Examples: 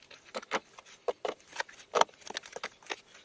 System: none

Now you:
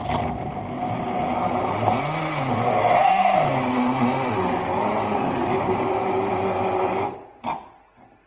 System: none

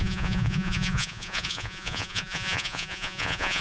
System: vocoder, Vocos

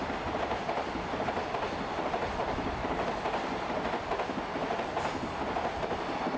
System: none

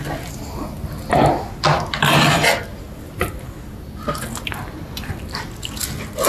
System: none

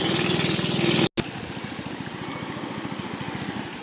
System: none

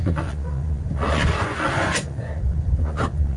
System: vocoder, Vocos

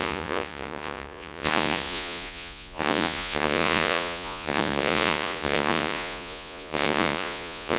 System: vocoder, Vocos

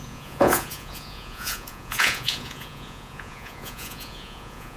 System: vocoder, Vocos